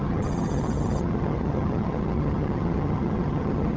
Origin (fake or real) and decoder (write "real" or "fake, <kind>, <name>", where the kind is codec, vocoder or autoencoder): fake, vocoder, HiFi-GAN